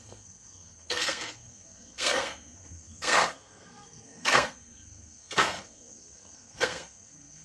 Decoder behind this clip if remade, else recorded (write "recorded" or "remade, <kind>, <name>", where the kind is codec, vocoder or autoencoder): remade, codec, SNAC